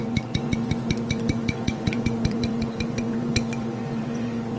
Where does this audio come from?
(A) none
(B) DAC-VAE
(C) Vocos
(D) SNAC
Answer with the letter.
C